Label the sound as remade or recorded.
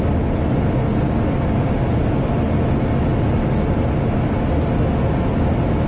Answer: recorded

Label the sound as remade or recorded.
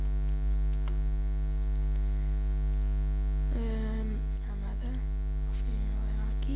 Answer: recorded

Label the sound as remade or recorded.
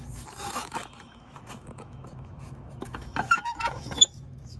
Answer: remade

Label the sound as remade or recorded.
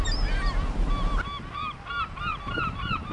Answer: recorded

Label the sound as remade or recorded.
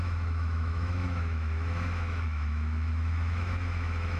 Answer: remade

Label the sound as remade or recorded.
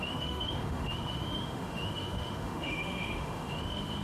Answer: remade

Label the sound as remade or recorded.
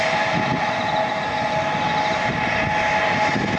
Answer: recorded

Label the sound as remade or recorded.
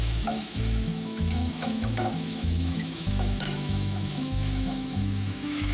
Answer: remade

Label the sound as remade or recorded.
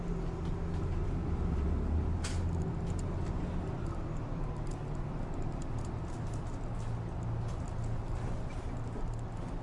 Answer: recorded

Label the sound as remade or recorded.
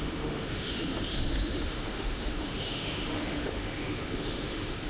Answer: remade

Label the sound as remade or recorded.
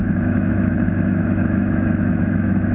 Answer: remade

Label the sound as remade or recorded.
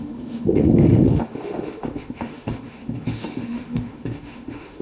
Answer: remade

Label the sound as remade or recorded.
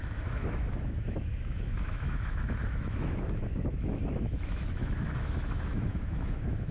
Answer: remade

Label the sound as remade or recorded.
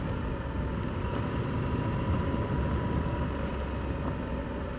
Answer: recorded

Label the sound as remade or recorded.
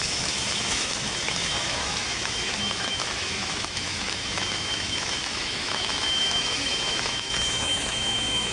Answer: remade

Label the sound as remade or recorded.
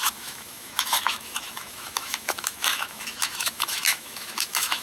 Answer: remade